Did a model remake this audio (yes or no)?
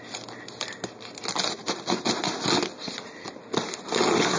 no